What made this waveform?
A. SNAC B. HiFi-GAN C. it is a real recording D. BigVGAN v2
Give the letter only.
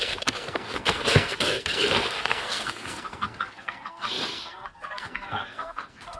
A